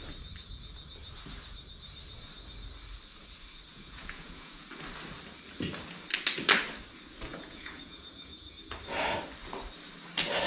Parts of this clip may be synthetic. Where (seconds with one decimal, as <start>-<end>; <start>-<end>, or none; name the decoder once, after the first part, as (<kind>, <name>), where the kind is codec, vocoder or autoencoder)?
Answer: 3.7-4.7 (vocoder, Vocos); 7.3-8.5